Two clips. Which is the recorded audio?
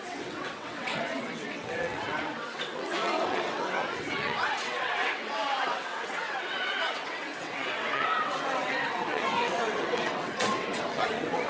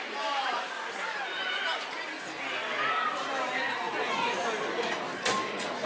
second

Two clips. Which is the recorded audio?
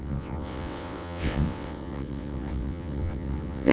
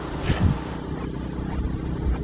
second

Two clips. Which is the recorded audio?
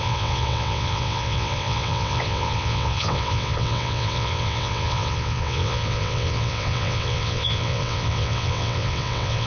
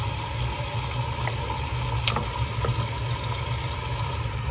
second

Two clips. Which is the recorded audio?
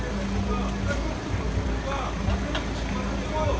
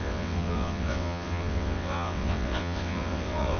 first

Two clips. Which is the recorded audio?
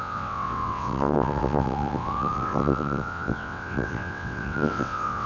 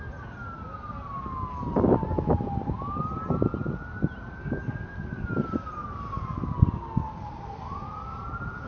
second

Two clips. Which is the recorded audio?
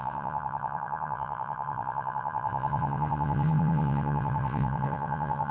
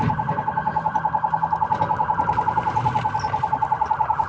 second